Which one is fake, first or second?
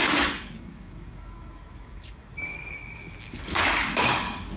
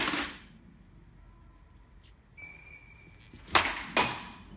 first